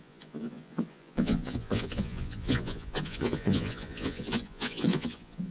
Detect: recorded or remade remade